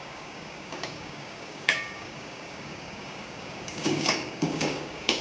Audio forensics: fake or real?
fake